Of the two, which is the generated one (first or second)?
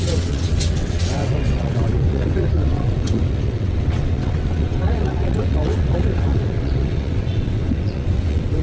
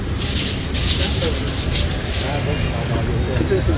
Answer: first